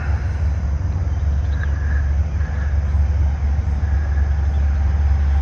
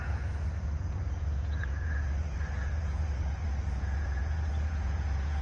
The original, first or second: first